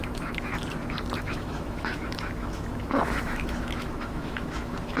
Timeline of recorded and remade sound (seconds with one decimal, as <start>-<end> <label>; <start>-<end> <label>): 0.0-0.5 remade; 0.5-1.2 recorded; 1.2-5.0 remade